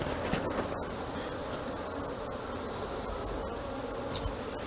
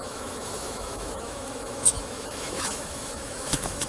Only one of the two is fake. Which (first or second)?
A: second